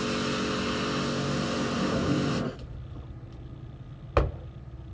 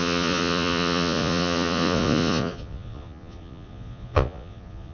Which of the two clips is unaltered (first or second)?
first